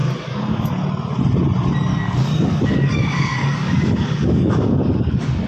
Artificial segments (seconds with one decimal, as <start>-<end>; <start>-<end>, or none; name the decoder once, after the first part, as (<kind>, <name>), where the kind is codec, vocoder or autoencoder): 0.0-0.7 (codec, DAC); 1.9-5.5